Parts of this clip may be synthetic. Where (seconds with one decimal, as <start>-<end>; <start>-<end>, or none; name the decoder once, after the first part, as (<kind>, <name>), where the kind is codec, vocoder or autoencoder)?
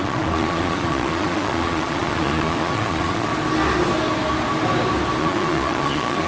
0.0-3.3 (vocoder, Vocos); 5.2-6.3